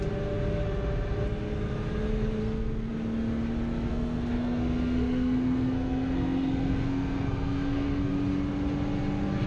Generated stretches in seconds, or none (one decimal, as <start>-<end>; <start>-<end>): 2.4-2.9; 3.9-8.1